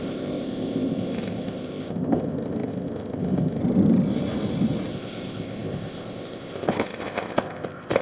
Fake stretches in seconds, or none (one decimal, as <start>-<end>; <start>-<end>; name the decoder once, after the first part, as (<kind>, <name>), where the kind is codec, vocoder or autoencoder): 0.0-3.6 (codec, ZipCodec); 4.9-8.0